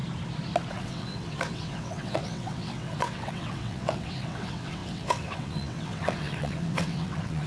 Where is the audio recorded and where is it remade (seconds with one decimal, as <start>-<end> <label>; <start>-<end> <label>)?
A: 0.0-0.7 recorded; 0.7-7.5 remade